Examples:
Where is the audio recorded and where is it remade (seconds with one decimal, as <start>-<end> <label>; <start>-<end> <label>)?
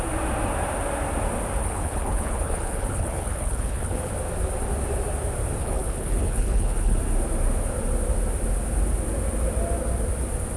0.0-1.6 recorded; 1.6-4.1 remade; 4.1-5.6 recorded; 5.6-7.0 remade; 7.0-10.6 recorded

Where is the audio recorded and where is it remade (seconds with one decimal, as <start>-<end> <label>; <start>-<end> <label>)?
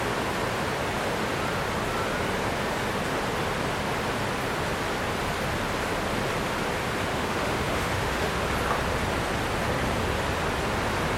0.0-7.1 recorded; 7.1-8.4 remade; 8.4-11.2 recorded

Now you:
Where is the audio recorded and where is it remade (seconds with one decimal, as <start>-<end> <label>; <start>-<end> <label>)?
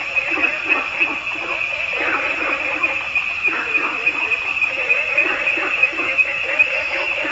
0.0-3.3 recorded; 3.3-4.2 remade; 4.2-5.8 recorded; 5.8-7.3 remade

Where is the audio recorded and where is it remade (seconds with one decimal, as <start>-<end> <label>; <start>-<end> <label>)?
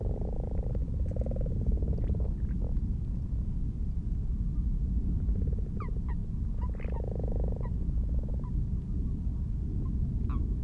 0.0-10.6 recorded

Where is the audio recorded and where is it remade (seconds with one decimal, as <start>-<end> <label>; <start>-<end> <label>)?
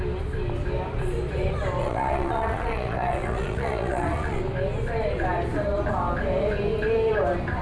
0.0-1.8 recorded; 1.8-4.4 remade; 4.4-7.6 recorded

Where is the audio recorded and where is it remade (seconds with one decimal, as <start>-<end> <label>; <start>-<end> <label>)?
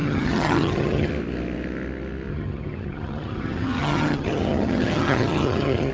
0.0-1.1 remade; 1.1-2.3 recorded; 2.3-5.9 remade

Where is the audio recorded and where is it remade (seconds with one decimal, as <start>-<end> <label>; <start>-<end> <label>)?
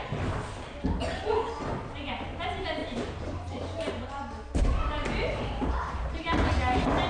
0.0-2.8 recorded; 2.8-3.9 remade; 3.9-5.0 recorded; 5.0-6.5 remade; 6.5-7.1 recorded